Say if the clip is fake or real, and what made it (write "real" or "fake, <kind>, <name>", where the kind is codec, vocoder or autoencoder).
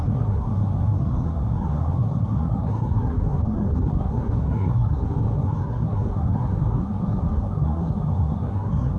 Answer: fake, codec, SNAC